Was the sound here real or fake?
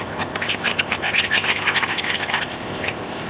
fake